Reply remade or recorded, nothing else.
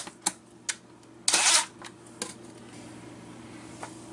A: recorded